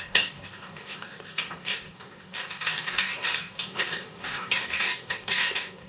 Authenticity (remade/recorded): remade